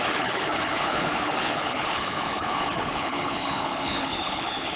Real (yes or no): no